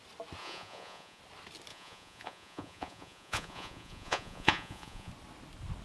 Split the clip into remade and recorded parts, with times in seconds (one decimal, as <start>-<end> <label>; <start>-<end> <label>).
0.0-0.4 recorded; 0.4-1.2 remade; 1.2-1.7 recorded; 1.7-5.1 remade; 5.1-5.8 recorded